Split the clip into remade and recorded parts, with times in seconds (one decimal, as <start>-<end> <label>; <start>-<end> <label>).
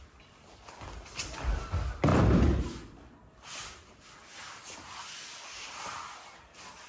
0.0-6.9 recorded